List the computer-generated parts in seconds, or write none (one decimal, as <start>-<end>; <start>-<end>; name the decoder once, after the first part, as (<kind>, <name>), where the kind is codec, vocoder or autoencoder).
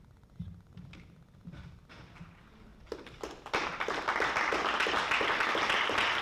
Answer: none